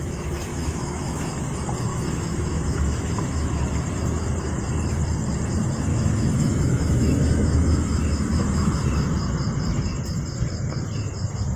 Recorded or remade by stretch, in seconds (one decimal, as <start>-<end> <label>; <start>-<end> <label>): 0.0-0.5 recorded; 0.5-1.4 remade; 1.4-1.9 recorded; 1.9-3.6 remade; 3.6-5.9 recorded; 5.9-8.7 remade; 8.7-11.6 recorded

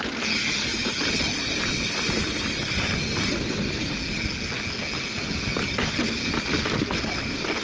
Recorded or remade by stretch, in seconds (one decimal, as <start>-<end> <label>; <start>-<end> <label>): 0.0-7.6 recorded

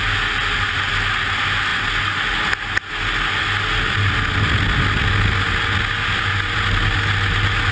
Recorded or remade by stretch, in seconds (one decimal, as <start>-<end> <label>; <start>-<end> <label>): 0.0-7.7 recorded